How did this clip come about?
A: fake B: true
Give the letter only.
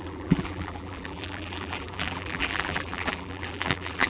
A